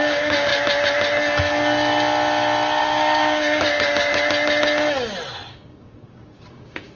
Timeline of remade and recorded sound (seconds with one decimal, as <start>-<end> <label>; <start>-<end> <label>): 0.0-0.5 remade; 0.5-2.8 recorded; 2.8-4.1 remade; 4.1-5.5 recorded; 5.5-7.0 remade